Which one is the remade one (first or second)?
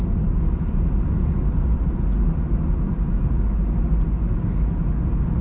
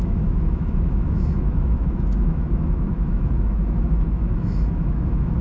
second